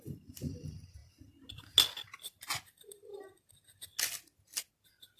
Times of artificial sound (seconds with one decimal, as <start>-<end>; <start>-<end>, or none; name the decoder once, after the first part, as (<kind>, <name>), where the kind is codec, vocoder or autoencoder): none